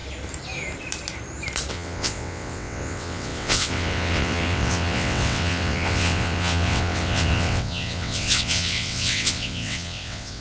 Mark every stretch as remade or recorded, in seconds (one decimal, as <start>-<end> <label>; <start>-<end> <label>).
0.0-1.7 recorded; 1.7-10.4 remade